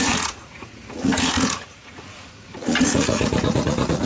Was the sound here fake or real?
fake